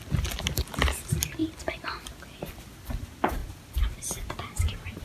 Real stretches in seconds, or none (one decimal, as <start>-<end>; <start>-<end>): 0.0-5.0